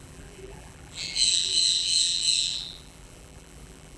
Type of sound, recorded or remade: remade